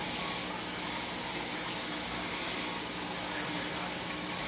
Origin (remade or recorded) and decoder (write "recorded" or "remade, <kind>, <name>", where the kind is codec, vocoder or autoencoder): recorded